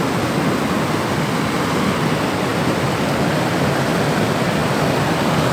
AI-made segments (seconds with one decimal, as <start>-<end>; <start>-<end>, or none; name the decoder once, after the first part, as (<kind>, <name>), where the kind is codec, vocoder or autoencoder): 2.5-3.8 (vocoder, BigVGAN v2)